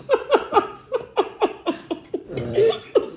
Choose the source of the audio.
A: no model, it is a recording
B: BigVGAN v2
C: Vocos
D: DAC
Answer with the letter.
B